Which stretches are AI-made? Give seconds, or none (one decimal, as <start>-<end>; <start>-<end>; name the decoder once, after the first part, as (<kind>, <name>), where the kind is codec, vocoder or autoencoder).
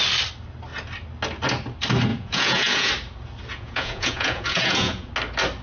2.1-2.9 (vocoder, Vocos); 3.5-5.1